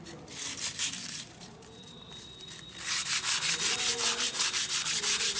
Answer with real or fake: real